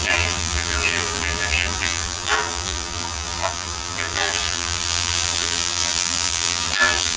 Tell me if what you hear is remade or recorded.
remade